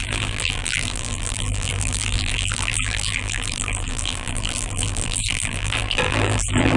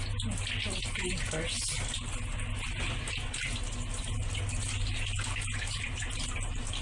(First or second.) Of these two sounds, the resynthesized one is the first